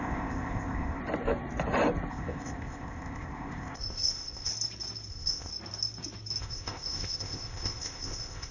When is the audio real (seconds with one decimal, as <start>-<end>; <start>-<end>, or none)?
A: 1.0-2.1; 4.5-5.1; 5.5-6.4